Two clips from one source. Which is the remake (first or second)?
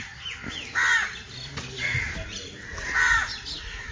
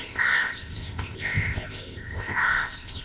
second